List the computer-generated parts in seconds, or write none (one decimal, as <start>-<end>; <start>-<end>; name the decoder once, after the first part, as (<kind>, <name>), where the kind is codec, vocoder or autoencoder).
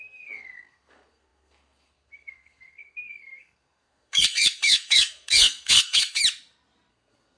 0.0-6.2 (codec, SNAC); 6.9-7.4